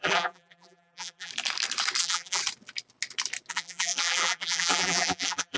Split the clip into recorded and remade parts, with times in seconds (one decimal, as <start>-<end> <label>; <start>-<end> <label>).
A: 0.0-1.3 remade; 1.3-2.0 recorded; 2.0-2.4 remade; 2.4-3.5 recorded; 3.5-5.6 remade